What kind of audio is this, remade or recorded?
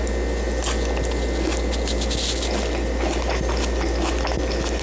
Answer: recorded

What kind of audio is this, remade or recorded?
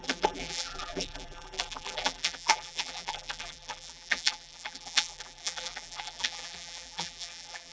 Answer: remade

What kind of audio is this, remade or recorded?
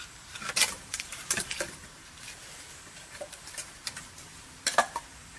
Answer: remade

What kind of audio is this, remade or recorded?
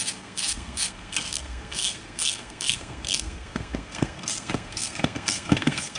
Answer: remade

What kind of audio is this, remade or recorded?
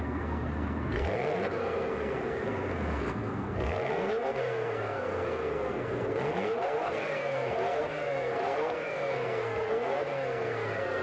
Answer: remade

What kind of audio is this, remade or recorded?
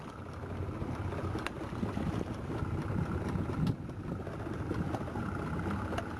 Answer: recorded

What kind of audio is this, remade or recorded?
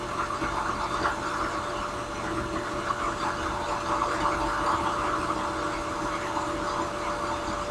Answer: recorded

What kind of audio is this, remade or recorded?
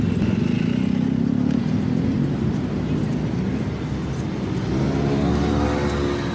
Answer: recorded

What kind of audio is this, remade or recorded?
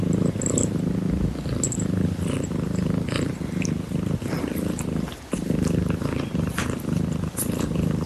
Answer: recorded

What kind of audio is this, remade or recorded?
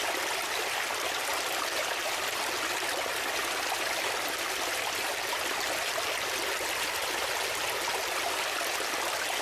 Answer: recorded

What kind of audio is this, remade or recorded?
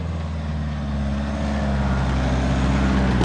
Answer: recorded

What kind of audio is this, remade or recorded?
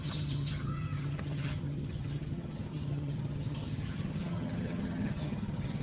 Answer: remade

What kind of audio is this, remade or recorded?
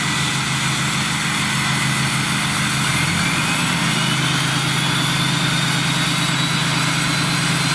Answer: recorded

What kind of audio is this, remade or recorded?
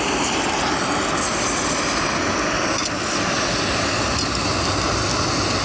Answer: recorded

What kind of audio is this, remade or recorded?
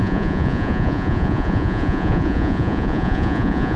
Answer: remade